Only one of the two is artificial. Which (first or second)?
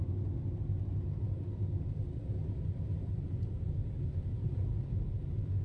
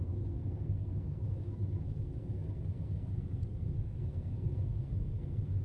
second